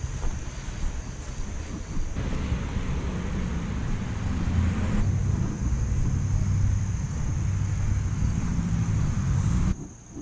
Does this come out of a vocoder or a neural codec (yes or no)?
no